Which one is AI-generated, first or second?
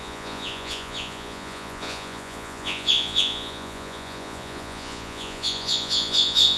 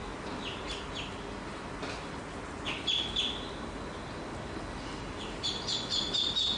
first